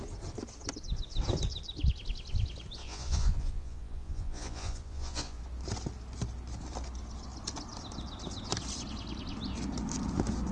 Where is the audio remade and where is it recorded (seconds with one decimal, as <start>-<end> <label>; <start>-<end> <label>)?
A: 0.0-2.8 recorded; 2.8-5.4 remade; 5.4-10.5 recorded